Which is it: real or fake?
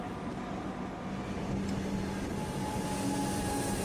real